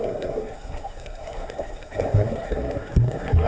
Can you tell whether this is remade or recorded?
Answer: remade